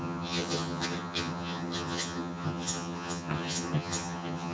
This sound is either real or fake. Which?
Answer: fake